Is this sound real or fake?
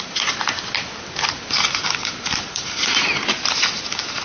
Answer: real